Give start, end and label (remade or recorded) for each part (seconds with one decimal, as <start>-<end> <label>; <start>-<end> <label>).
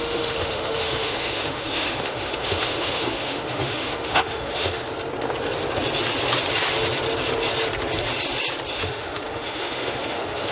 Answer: 0.0-4.8 remade; 4.8-8.7 recorded; 8.7-10.5 remade